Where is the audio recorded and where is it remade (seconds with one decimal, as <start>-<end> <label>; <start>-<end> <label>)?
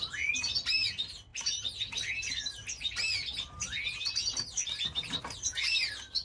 0.0-6.2 recorded